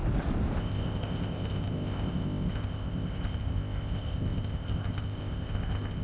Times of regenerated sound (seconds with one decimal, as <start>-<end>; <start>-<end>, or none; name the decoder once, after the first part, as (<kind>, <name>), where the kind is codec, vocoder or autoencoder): 0.6-6.0 (codec, ZipCodec)